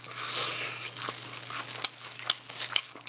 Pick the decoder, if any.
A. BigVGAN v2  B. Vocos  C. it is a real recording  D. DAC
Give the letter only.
D